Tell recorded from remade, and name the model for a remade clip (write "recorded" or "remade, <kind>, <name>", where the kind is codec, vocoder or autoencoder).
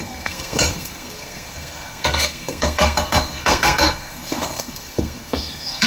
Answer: remade, codec, SNAC